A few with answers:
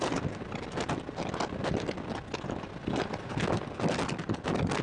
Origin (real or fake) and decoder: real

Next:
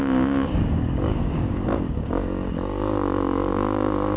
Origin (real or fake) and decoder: fake, codec, DAC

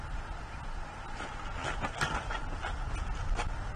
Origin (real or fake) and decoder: real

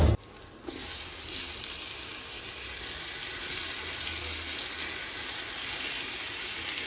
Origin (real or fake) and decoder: real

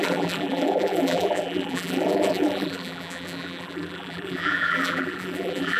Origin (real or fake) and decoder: fake, vocoder, BigVGAN v2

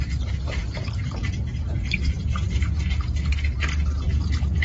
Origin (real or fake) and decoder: real